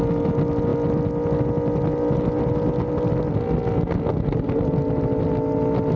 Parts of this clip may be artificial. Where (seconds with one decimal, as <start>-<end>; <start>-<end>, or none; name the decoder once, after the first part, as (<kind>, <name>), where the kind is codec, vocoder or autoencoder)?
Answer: none